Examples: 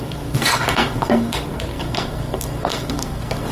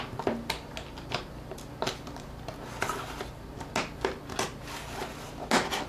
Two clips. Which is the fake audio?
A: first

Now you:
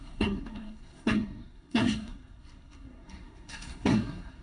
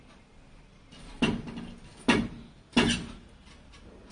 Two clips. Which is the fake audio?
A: first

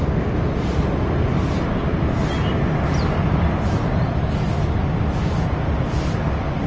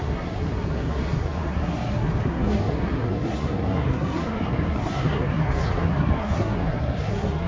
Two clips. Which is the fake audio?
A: second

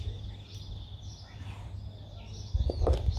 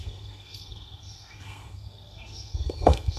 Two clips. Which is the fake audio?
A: second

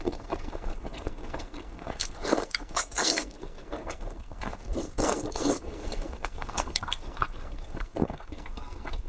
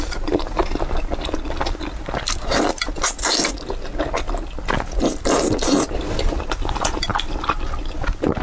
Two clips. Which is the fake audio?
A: first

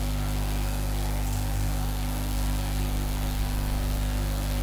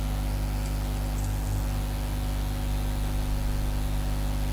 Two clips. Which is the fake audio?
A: first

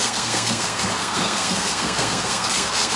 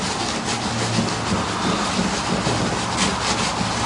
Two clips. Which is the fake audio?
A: first